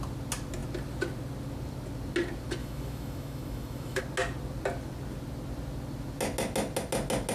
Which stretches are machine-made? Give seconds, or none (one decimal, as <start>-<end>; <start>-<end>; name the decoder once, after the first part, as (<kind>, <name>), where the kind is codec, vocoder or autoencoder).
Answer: 2.6-4.0 (autoencoder, DAC-VAE)